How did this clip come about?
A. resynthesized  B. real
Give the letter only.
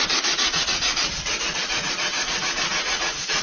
A